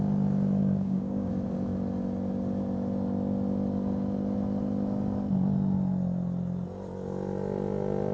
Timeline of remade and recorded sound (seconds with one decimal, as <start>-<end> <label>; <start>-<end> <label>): 0.0-0.6 recorded; 0.6-1.3 remade; 1.3-8.1 recorded